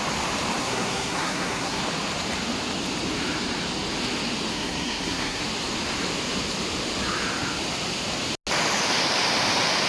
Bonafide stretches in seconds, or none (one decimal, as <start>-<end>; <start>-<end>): 0.0-0.6; 1.8-4.5; 5.4-9.9